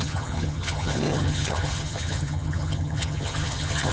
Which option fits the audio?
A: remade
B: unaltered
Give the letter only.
A